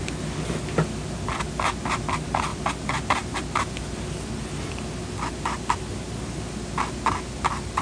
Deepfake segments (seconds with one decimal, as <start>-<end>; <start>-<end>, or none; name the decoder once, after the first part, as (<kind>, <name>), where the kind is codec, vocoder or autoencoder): none